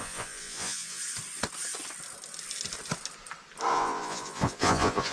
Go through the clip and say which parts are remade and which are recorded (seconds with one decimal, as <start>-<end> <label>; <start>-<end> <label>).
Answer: 0.0-1.0 remade; 1.0-3.7 recorded; 3.7-5.1 remade